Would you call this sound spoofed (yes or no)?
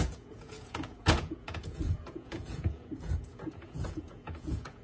yes